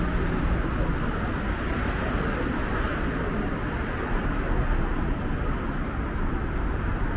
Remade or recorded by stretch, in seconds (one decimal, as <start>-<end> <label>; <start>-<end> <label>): 0.0-7.2 recorded